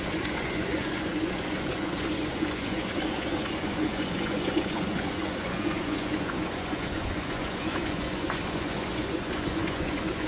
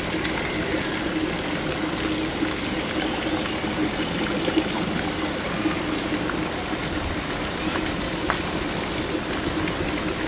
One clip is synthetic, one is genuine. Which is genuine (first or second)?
second